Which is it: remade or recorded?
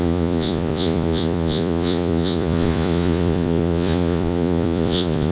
remade